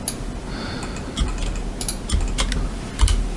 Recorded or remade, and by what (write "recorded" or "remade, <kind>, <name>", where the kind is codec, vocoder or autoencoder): recorded